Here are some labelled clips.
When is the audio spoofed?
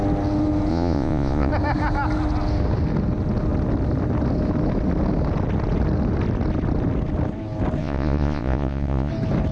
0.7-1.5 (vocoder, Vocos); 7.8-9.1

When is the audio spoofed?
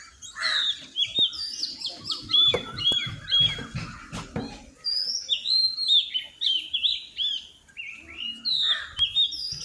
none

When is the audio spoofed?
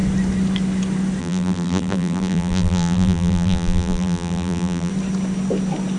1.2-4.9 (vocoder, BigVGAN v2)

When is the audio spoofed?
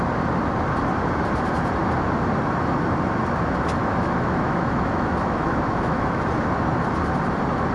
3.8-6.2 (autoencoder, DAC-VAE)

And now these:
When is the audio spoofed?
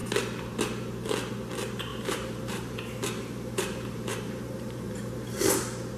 1.9-5.5 (vocoder, BigVGAN v2)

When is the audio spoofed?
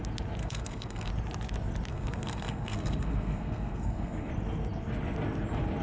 0.4-1.1 (codec, SNAC); 1.9-4.3